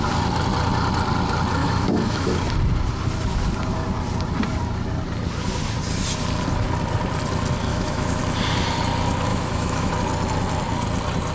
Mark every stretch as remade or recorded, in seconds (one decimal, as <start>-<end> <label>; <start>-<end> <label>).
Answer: 0.0-1.6 recorded; 1.6-2.3 remade; 2.3-7.7 recorded; 7.7-8.2 remade; 8.2-9.3 recorded; 9.3-9.9 remade; 9.9-11.3 recorded